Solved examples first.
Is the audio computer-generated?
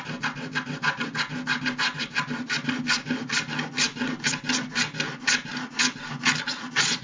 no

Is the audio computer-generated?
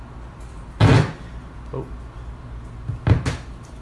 no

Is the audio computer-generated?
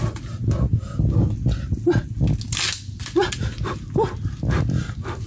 no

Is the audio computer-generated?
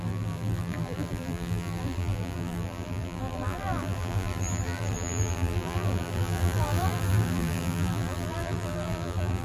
yes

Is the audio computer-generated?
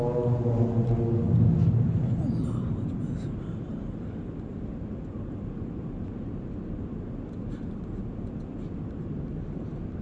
no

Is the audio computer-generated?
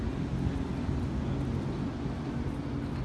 no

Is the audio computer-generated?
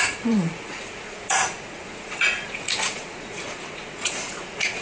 yes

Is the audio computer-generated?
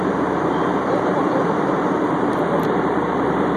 yes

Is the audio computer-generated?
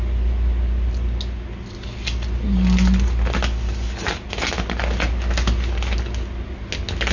no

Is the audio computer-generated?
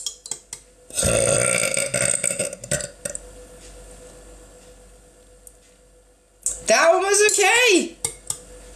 no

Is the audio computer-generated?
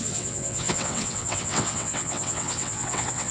yes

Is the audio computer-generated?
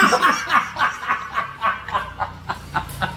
no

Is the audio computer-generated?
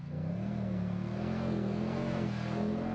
yes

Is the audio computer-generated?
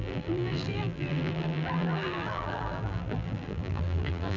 yes